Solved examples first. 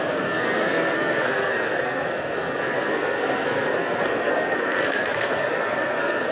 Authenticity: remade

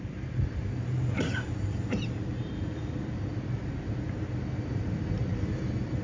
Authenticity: remade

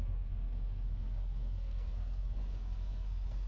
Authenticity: remade